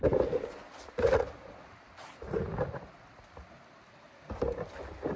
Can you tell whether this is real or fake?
real